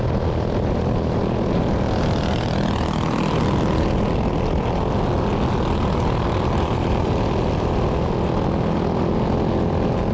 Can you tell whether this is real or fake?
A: real